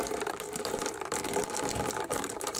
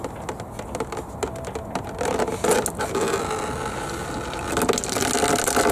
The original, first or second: second